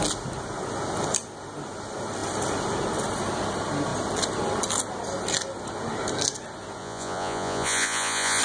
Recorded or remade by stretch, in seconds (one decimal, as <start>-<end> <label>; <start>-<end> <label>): 0.0-6.8 recorded; 6.8-8.4 remade